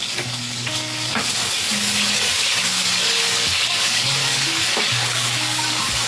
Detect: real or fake fake